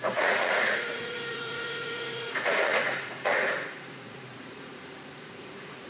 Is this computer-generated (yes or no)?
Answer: yes